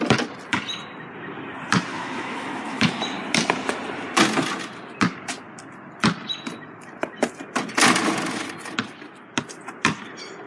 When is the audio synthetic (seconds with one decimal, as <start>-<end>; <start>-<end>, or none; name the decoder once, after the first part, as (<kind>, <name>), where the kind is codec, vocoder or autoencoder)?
1.9-2.9 (autoencoder, DAC-VAE)

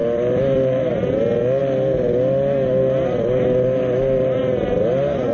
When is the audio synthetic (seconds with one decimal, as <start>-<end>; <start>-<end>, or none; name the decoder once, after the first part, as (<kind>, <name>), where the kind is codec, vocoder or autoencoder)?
none